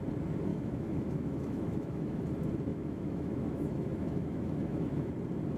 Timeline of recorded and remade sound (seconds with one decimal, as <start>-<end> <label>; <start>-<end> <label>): 0.0-0.5 recorded; 0.5-2.2 remade; 2.2-2.7 recorded; 2.7-5.1 remade; 5.1-5.6 recorded